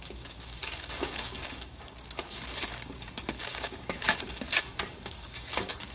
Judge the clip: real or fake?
fake